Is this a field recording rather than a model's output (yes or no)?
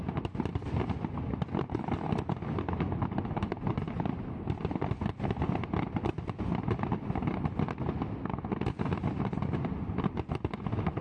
yes